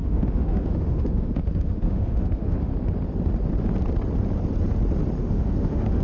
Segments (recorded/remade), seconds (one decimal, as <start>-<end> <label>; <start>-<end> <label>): 0.0-2.7 remade; 2.7-5.2 recorded; 5.2-6.0 remade